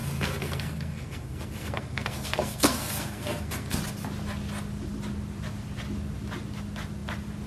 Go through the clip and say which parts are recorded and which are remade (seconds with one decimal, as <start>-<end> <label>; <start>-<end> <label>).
0.0-3.8 remade; 3.8-7.5 recorded